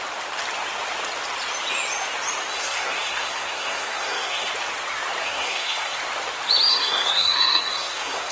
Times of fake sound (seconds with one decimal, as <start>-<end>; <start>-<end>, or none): 2.5-4.5; 5.2-6.0; 6.7-8.3